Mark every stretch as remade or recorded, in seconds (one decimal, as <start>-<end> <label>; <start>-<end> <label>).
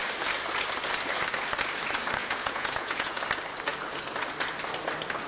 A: 0.0-2.2 recorded; 2.2-3.2 remade; 3.2-5.3 recorded